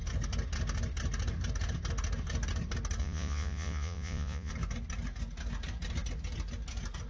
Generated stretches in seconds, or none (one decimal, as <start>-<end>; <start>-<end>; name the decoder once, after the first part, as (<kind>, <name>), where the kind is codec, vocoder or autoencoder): 3.0-4.5 (vocoder, Vocos)